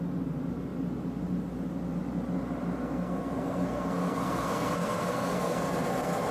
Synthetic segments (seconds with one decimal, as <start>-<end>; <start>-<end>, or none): 2.8-6.3